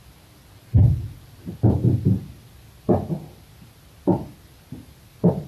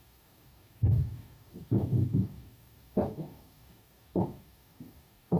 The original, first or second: first